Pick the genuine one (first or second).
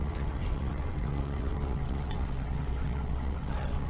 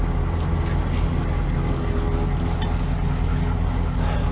second